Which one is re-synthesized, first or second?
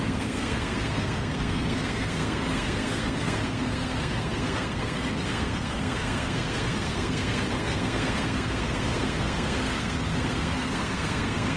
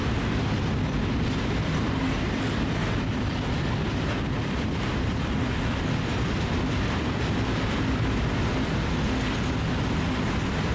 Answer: first